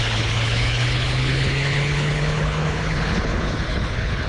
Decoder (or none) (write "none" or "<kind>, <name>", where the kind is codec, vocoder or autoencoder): codec, HILCodec